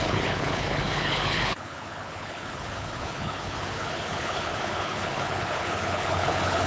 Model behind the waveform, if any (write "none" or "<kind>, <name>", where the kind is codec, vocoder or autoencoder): codec, HILCodec